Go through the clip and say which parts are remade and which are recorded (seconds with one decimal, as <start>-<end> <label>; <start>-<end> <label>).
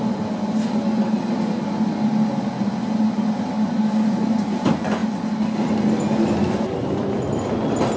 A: 0.0-8.0 recorded